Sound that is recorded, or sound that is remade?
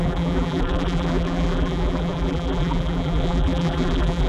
remade